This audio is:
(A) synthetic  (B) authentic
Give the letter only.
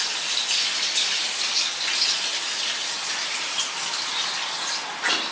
B